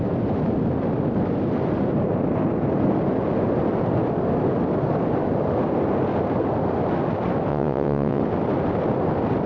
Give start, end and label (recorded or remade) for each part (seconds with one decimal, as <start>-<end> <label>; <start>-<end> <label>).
0.0-7.5 recorded; 7.5-8.2 remade; 8.2-9.5 recorded